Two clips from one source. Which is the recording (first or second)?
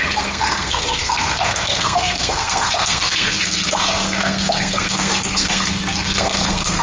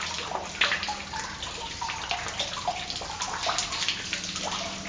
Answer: second